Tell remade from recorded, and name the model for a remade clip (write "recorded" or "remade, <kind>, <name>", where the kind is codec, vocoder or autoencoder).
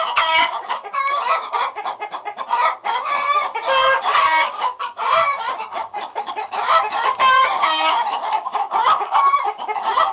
remade, codec, DAC